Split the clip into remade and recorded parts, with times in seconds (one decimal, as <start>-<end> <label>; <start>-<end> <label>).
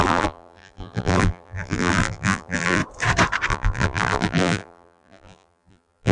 0.0-2.8 remade; 2.8-3.5 recorded; 3.5-6.1 remade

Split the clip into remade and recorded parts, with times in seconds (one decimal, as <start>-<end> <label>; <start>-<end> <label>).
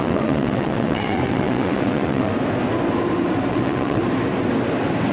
0.0-2.3 remade; 2.3-3.5 recorded; 3.5-4.0 remade; 4.0-5.1 recorded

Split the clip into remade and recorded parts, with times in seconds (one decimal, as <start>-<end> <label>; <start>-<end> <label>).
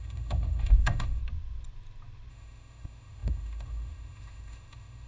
0.0-1.2 remade; 1.2-2.3 recorded; 2.3-5.1 remade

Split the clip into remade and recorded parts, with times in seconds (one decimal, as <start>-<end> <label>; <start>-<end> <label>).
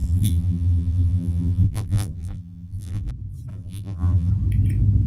0.0-3.1 remade; 3.1-3.5 recorded; 3.5-4.3 remade; 4.3-5.1 recorded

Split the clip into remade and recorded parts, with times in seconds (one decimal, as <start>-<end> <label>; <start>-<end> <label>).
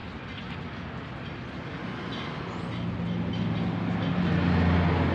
0.0-5.1 recorded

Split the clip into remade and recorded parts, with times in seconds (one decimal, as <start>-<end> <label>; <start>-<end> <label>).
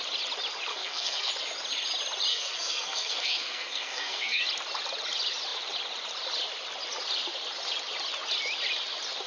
0.0-0.7 recorded; 0.7-1.3 remade; 1.3-2.3 recorded; 2.3-4.4 remade; 4.4-9.3 recorded